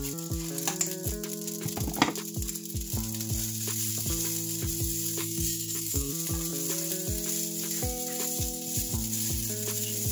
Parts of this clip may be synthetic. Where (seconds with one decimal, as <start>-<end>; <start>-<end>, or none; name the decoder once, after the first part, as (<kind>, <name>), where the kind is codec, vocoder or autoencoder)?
5.2-6.1 (codec, SNAC)

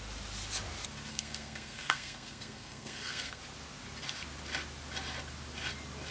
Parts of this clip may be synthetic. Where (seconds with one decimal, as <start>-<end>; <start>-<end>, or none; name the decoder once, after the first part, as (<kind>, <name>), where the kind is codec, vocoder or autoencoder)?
1.1-3.4 (codec, SNAC)

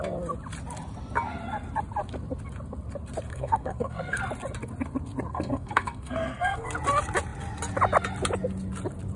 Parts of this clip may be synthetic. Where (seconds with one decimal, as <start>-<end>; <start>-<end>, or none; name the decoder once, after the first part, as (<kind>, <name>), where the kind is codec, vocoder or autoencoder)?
3.3-4.2 (codec, SNAC); 5.3-6.7

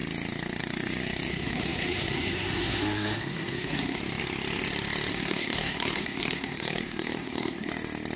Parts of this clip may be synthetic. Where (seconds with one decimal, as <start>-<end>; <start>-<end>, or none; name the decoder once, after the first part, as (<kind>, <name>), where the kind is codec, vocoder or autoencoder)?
1.3-4.0 (codec, SNAC); 5.1-7.7

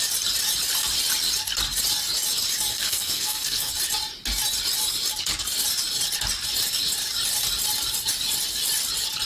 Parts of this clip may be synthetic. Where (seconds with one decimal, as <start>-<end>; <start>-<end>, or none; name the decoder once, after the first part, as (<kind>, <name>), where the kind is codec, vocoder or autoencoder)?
2.7-3.7 (codec, SNAC)

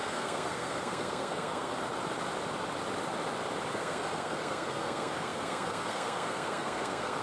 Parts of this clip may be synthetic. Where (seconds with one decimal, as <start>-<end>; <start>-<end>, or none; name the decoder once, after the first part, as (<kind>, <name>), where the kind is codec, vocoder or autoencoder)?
0.0-1.7 (codec, SNAC); 3.7-7.2

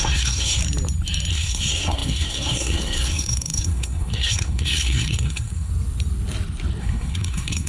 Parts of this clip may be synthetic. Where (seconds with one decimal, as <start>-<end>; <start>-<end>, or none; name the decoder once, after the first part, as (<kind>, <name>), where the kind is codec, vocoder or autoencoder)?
0.0-0.6 (codec, SNAC); 1.3-5.7; 6.8-7.7